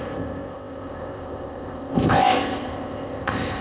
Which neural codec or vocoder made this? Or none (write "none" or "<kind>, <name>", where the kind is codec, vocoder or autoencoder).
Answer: codec, ZipCodec